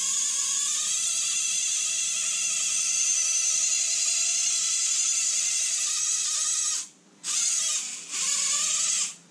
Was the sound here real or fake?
real